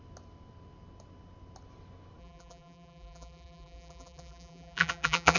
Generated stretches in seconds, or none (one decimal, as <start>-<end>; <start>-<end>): 2.2-5.4